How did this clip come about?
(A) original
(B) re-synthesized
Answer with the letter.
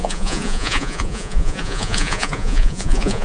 B